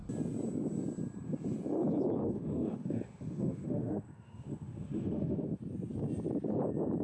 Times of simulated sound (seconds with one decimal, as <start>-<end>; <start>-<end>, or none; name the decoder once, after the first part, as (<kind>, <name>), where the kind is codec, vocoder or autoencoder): 2.2-5.6 (autoencoder, DAC-VAE)